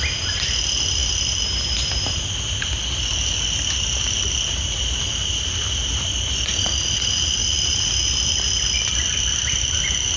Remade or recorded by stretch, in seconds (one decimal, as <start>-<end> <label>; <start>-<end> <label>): 0.0-10.2 recorded